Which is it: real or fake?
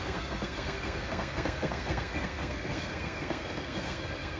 fake